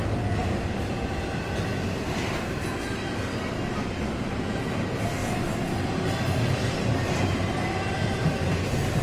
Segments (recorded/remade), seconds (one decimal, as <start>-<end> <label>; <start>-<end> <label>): 0.0-9.0 recorded

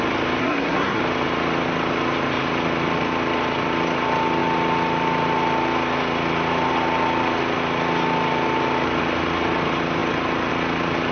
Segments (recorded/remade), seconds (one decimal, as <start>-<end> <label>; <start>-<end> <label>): 0.0-0.4 recorded; 0.4-1.0 remade; 1.0-11.1 recorded

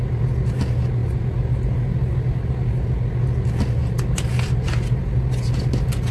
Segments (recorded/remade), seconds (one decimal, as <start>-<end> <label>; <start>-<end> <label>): 0.0-6.1 recorded

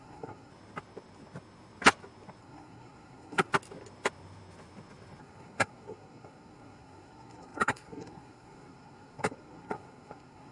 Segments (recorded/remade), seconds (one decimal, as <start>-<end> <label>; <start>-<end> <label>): 0.0-0.5 remade; 0.5-2.4 recorded; 2.4-3.5 remade; 3.5-5.2 recorded; 5.2-10.5 remade

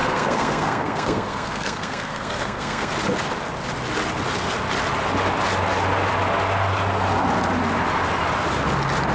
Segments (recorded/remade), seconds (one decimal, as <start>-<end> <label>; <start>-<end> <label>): 0.0-2.9 remade; 2.9-9.1 recorded